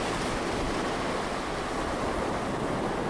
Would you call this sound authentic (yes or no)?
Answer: yes